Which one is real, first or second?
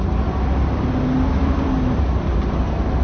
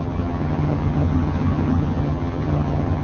first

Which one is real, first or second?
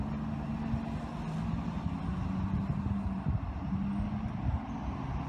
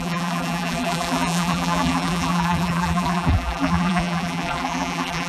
first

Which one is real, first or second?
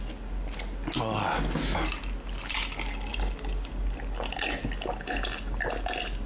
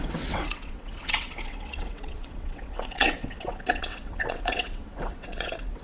first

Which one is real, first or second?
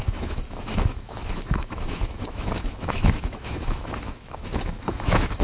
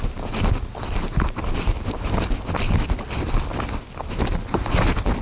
second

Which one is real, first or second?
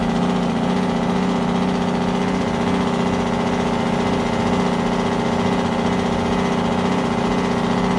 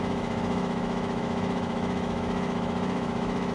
first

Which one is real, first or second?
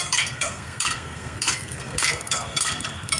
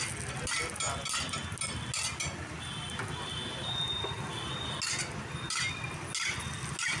second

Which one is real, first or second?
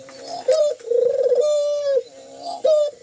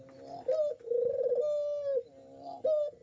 second